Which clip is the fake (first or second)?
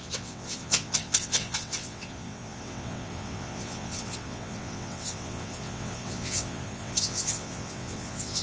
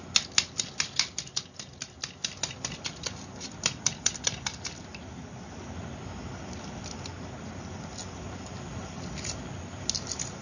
first